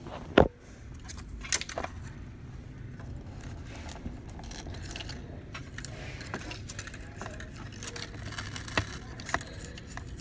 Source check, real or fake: real